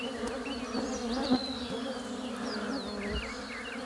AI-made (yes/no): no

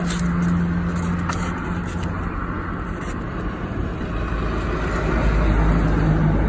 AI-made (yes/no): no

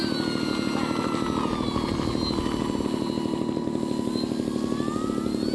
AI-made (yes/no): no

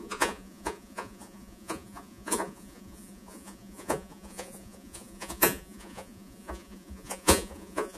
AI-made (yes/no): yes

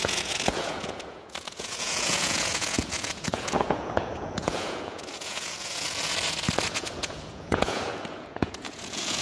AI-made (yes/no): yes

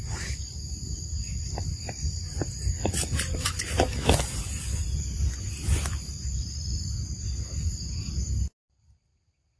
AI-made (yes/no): no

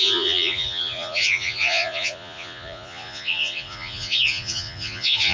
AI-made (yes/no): yes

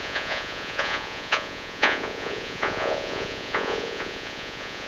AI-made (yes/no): yes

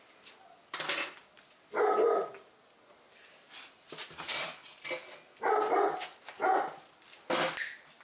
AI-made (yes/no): no